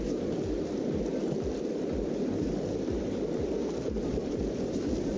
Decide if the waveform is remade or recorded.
remade